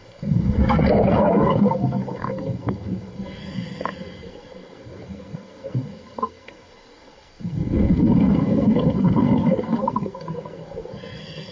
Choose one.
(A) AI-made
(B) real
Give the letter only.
A